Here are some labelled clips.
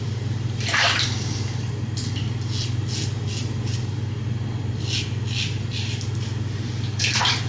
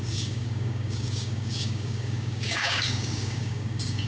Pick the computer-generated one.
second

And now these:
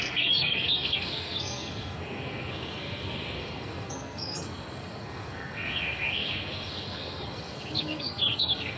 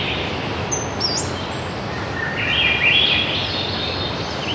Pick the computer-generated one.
first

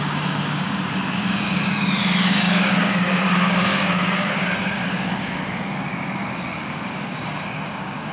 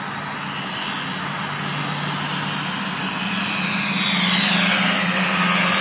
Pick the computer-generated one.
first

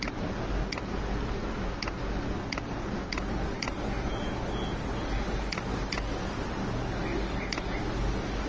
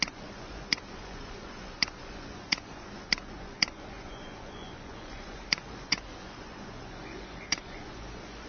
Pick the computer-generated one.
second